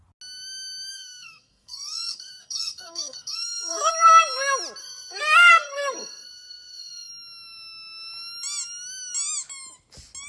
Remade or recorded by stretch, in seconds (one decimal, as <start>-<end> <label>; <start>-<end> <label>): 0.0-0.9 recorded; 0.9-3.9 remade; 3.9-4.8 recorded; 4.8-7.1 remade; 7.1-10.3 recorded